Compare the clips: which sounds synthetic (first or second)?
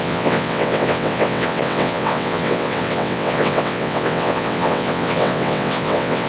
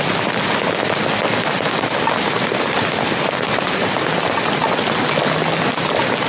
first